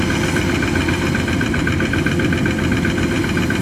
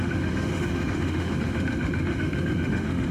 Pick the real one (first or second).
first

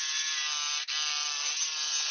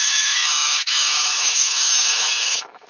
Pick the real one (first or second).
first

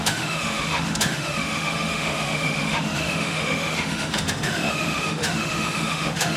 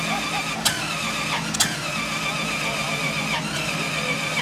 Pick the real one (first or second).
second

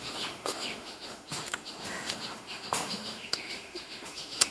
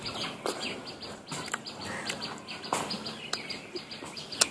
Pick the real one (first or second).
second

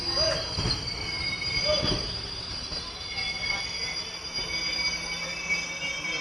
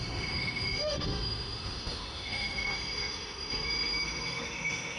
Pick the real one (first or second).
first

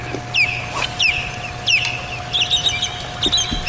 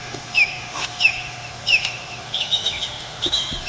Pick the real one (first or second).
first